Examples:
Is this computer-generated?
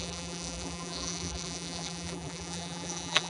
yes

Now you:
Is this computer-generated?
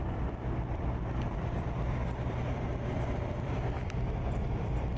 yes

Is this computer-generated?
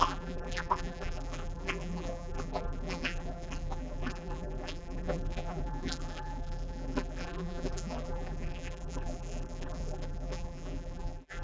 yes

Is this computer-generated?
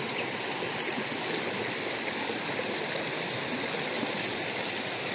yes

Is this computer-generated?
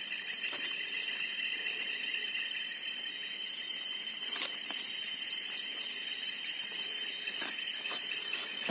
yes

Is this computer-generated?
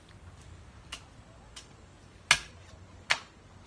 no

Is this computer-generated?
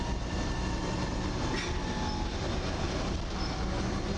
no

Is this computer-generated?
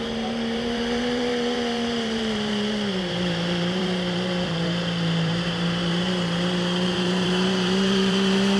yes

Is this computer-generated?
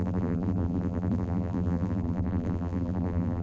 yes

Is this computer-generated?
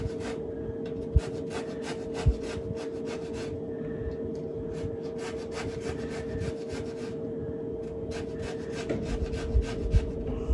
no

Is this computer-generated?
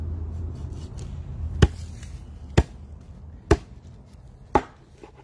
no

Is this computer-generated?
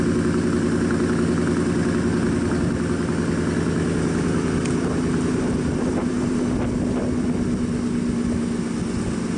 no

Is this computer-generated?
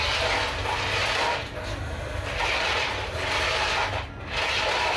no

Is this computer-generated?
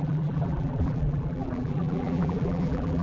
yes